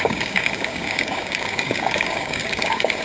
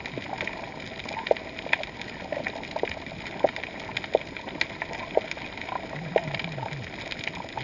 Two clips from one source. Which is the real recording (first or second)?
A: second